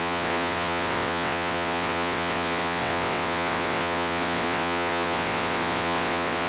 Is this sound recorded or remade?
remade